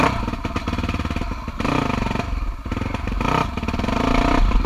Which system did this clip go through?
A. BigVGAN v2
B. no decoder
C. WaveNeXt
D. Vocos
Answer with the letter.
B